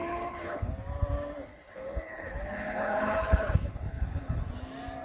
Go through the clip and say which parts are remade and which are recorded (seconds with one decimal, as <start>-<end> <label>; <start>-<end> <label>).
0.0-0.7 remade; 0.7-1.5 recorded; 1.5-4.5 remade; 4.5-5.0 recorded